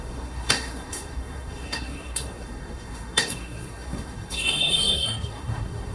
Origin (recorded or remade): remade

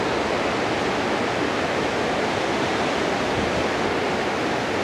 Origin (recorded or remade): recorded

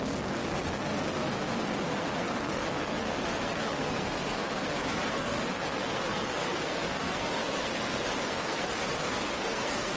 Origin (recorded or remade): remade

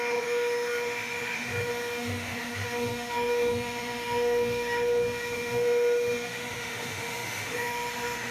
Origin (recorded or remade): remade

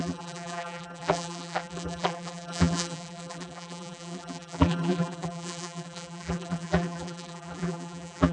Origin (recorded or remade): remade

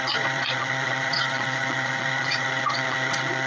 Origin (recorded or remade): remade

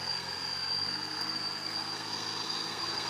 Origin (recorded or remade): remade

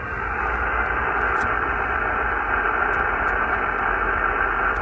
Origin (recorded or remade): recorded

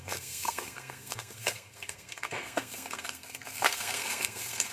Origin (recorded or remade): remade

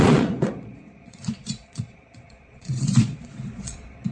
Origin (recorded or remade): remade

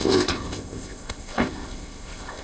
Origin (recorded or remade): remade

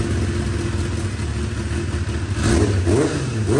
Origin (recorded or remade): recorded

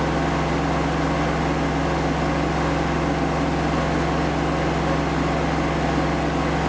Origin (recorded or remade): recorded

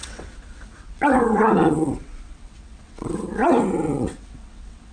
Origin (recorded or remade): remade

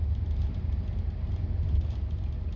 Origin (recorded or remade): remade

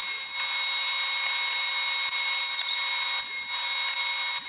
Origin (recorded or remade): recorded